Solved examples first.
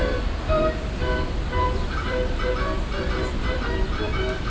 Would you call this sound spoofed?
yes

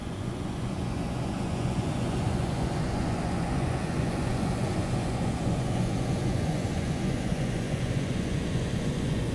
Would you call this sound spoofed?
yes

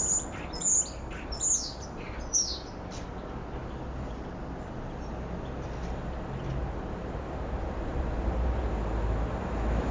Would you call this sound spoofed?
no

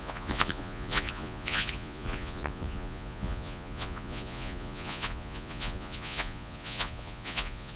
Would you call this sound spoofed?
yes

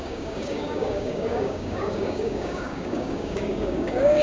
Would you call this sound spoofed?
yes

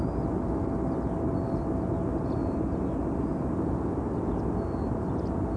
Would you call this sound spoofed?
no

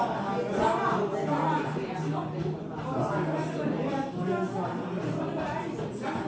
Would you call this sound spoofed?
no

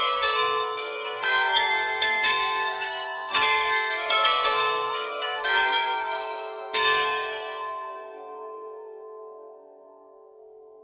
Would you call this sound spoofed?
yes